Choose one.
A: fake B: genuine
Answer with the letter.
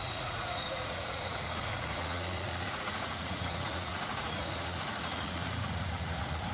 A